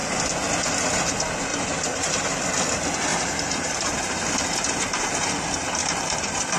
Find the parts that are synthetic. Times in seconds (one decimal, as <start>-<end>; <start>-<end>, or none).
1.5-2.1; 3.1-5.3